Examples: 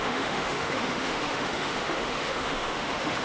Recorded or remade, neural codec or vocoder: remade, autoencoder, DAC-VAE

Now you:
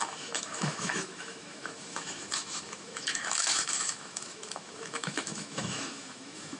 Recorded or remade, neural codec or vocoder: remade, autoencoder, DAC-VAE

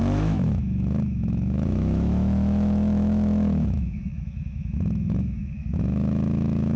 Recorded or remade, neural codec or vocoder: remade, autoencoder, DAC-VAE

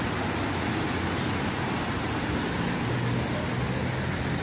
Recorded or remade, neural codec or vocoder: recorded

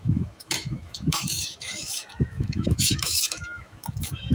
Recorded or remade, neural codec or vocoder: remade, autoencoder, DAC-VAE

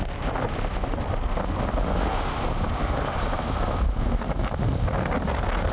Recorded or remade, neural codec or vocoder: recorded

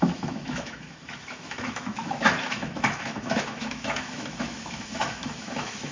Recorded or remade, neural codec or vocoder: remade, autoencoder, DAC-VAE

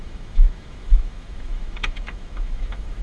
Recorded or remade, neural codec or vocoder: remade, autoencoder, DAC-VAE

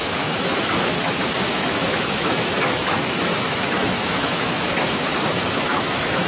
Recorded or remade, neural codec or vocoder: remade, autoencoder, DAC-VAE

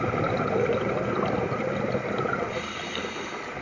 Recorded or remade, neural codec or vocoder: recorded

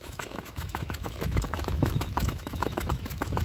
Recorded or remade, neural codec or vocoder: remade, autoencoder, DAC-VAE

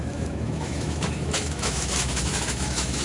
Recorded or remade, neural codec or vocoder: remade, autoencoder, DAC-VAE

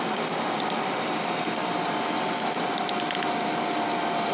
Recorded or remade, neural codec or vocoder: recorded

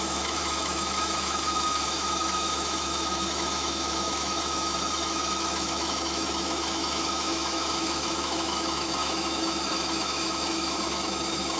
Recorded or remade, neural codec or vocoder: remade, autoencoder, DAC-VAE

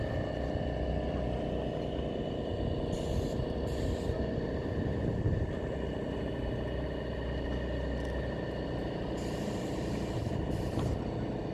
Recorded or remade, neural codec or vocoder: recorded